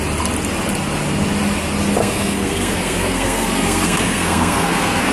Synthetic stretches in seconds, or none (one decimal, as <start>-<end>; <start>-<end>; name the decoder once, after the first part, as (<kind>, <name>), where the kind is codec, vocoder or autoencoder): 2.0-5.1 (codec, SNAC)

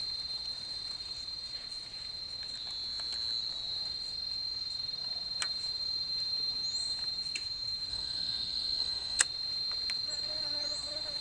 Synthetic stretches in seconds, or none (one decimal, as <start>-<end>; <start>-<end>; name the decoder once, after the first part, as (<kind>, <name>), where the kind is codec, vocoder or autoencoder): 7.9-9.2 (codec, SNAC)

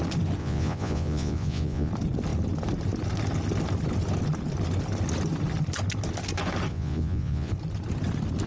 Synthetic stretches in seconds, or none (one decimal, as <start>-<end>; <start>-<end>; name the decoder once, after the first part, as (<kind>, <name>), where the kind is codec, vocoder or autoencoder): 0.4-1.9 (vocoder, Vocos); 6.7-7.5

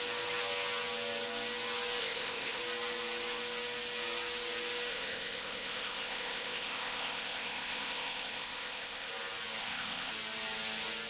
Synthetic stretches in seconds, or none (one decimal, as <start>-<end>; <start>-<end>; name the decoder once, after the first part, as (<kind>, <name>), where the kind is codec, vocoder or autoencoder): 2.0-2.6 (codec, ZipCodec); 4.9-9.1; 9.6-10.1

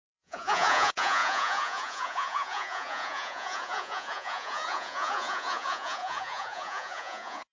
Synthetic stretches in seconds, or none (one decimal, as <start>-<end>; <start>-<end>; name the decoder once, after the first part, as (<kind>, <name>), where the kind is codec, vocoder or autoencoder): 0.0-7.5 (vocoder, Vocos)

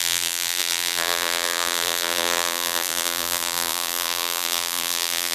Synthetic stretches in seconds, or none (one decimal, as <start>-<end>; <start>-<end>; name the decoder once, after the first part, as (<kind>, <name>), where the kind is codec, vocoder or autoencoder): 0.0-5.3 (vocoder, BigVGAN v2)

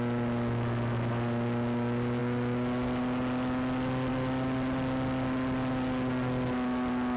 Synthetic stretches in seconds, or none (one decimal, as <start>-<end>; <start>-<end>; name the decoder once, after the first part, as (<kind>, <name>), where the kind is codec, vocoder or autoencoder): none